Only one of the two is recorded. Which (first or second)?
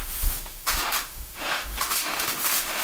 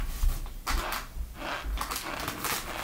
second